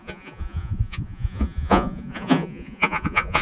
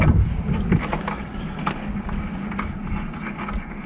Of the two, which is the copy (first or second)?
first